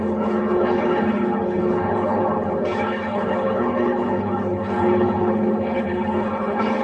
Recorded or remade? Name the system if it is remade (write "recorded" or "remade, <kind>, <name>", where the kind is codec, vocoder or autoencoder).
remade, codec, HILCodec